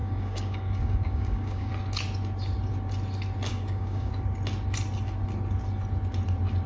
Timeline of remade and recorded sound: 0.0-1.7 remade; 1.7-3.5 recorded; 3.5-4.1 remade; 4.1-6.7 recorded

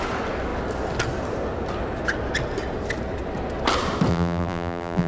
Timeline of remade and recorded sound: 0.0-4.1 recorded; 4.1-5.1 remade